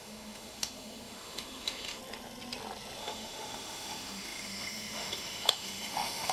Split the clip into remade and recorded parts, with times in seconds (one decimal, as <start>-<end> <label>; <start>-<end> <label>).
0.0-2.0 remade; 2.0-3.0 recorded; 3.0-6.3 remade